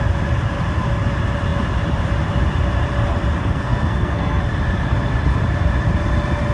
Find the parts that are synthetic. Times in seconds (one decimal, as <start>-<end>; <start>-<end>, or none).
3.4-4.4